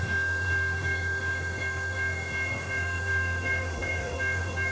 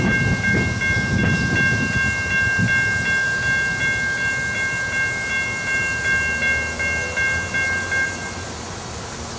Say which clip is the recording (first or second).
second